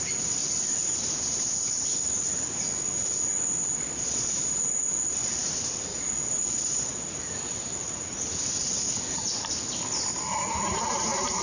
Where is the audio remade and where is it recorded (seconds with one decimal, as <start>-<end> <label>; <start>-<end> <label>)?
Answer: 0.0-3.7 recorded; 3.7-5.2 remade; 5.2-5.9 recorded; 5.9-6.9 remade; 6.9-11.4 recorded